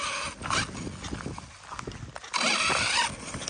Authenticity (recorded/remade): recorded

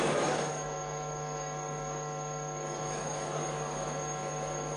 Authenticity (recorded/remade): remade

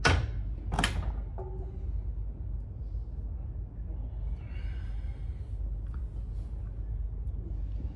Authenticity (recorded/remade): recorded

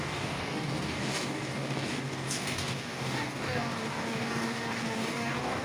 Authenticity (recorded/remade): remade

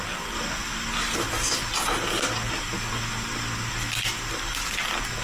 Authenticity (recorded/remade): recorded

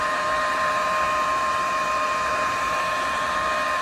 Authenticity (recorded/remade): remade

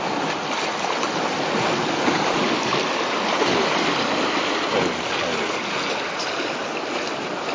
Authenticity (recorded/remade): recorded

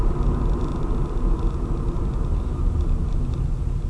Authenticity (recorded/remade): recorded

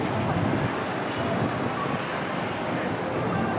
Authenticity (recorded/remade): recorded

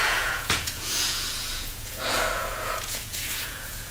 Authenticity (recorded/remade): remade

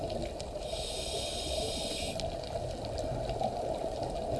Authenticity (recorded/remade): recorded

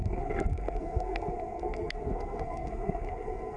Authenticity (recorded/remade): remade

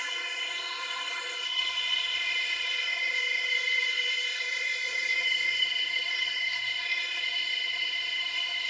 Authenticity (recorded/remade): remade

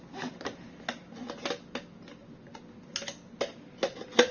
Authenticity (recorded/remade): recorded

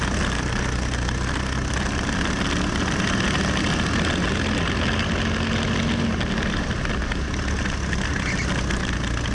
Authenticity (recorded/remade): recorded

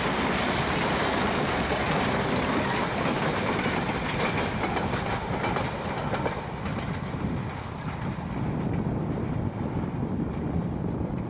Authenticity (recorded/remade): recorded